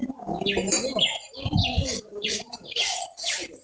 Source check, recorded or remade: remade